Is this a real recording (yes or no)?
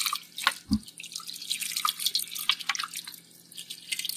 yes